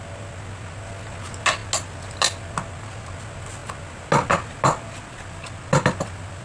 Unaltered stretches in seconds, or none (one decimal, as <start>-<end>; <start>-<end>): 0.0-6.4